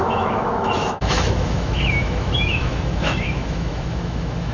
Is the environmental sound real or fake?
fake